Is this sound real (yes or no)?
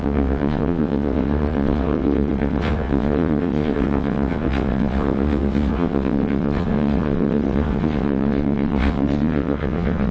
no